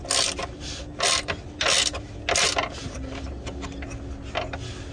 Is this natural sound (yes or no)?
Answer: yes